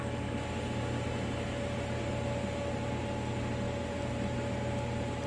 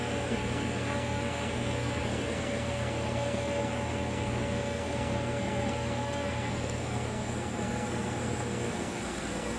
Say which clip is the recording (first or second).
first